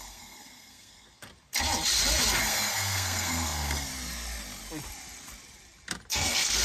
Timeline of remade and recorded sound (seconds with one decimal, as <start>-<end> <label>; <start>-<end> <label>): 0.0-1.3 remade; 1.3-2.4 recorded; 2.4-3.9 remade; 3.9-6.1 recorded; 6.1-6.6 remade